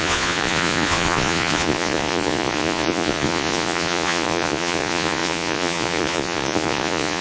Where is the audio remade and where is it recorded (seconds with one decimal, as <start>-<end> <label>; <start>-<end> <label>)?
0.0-7.2 remade